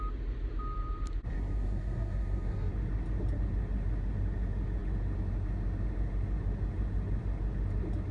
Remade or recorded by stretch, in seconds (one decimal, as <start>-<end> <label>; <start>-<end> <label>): 0.0-1.3 recorded; 1.3-2.7 remade; 2.7-8.1 recorded